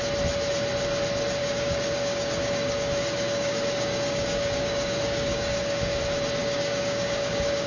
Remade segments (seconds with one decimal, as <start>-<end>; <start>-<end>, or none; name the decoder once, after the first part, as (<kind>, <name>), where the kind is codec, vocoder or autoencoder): 1.4-6.0 (codec, DAC); 6.4-7.7

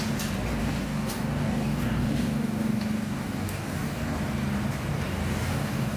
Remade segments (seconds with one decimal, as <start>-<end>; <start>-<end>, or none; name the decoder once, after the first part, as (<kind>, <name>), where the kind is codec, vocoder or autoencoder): 0.6-4.2 (codec, DAC); 5.2-6.0

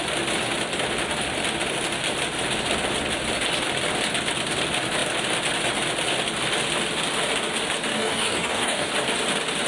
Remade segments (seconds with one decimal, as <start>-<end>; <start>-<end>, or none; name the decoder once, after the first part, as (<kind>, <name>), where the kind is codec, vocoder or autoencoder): 7.9-8.9 (codec, DAC)

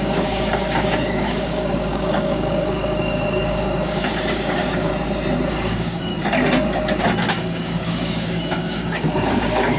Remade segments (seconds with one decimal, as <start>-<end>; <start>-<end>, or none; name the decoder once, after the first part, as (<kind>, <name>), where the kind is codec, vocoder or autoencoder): 0.0-4.9 (codec, DAC); 5.5-6.1; 7.3-9.8

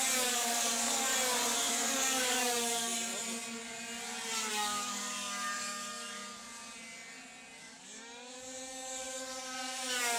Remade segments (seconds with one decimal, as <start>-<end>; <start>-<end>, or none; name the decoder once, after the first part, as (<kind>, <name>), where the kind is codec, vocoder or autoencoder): 0.0-1.1 (codec, DAC); 1.7-3.1; 4.5-6.2; 7.6-10.2

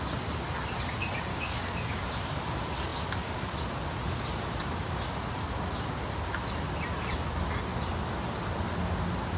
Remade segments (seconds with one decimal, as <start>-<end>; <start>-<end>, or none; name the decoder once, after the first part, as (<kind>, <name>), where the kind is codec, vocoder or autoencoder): 1.3-2.0 (codec, DAC)

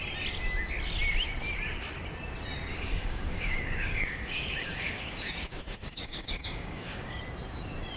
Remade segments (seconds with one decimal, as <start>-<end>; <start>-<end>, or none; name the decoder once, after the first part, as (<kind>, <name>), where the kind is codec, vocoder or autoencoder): 2.7-7.2 (codec, DAC)

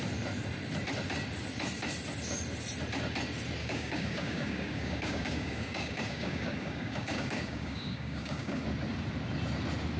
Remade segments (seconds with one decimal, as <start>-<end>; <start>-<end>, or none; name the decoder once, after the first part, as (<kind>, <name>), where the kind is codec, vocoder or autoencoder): 3.6-8.6 (codec, DAC)